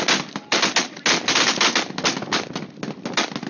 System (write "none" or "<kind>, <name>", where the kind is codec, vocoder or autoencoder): none